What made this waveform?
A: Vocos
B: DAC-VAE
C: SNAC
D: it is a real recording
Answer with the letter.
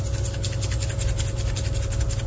D